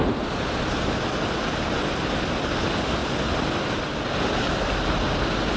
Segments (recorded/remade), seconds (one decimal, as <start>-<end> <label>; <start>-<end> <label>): 0.0-5.6 recorded